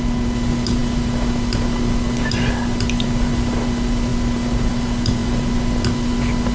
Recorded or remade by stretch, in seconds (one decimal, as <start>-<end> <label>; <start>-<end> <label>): 0.0-6.5 recorded